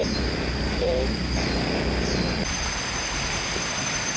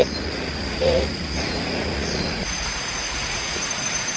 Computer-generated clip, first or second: second